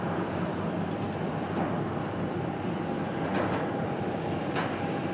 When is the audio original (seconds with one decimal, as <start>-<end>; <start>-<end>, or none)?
0.0-5.1